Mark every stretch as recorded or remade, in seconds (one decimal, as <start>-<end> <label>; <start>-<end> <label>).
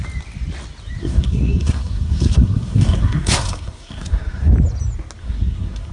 0.0-1.0 recorded; 1.0-4.5 remade; 4.5-5.2 recorded; 5.2-5.9 remade